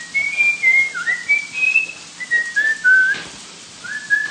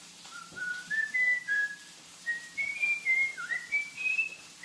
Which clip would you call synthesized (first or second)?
second